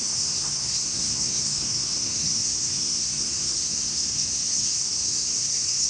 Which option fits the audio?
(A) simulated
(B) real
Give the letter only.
A